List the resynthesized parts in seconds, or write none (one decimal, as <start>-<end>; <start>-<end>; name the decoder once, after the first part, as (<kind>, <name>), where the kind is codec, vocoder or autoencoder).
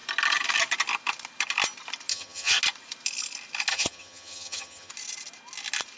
2.1-2.6 (vocoder, HiFi-GAN); 3.7-4.9